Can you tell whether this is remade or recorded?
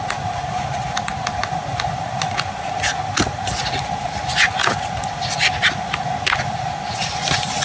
recorded